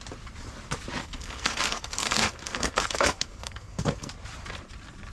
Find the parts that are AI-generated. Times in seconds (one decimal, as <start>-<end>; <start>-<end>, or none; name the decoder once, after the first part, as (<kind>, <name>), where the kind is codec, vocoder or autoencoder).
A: 1.0-4.1 (codec, SNAC)